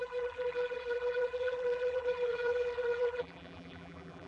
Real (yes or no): no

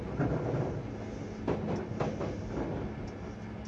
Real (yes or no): yes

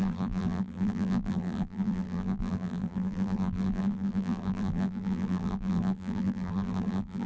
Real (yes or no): no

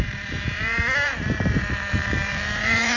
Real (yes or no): no